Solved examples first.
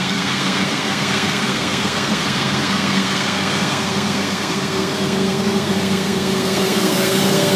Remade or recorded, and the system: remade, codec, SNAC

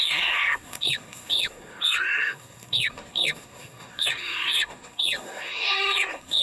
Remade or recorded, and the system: remade, codec, SNAC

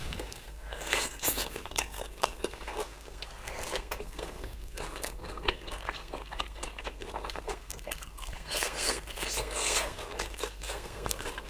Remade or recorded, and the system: remade, codec, SNAC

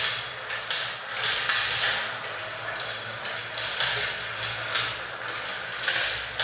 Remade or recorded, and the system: recorded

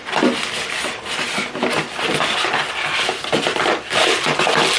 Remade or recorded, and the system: recorded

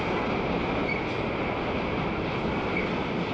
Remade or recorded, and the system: recorded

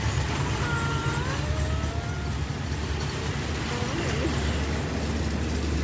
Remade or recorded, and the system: recorded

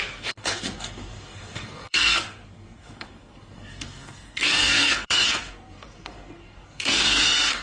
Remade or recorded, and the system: remade, codec, SNAC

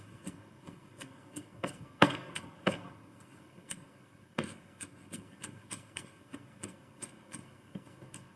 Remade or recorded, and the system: remade, codec, SNAC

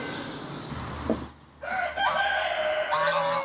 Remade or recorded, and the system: recorded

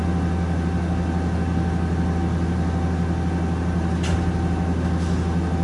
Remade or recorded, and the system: recorded